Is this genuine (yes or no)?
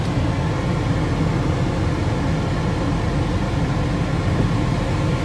yes